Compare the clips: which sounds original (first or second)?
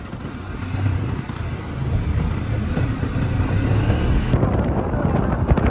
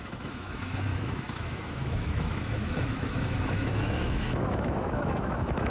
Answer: first